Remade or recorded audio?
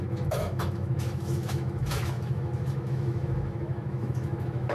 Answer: remade